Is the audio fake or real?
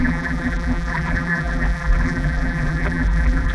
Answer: fake